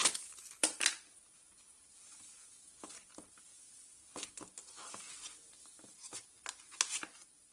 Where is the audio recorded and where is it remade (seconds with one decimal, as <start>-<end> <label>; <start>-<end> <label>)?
0.0-7.5 recorded